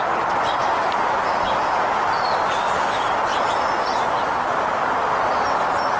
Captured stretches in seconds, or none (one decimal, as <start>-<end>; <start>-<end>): 0.0-6.0